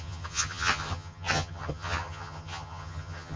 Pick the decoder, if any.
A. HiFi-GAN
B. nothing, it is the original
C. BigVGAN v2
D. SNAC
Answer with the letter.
A